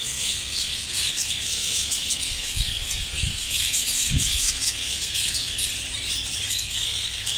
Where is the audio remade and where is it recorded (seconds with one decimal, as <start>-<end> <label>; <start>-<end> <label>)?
0.0-5.7 remade; 5.7-6.5 recorded; 6.5-7.4 remade